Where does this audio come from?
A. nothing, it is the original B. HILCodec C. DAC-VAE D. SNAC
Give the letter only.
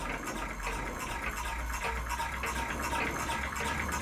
A